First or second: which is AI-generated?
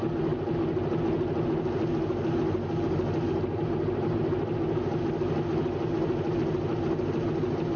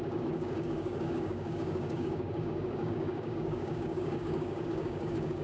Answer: second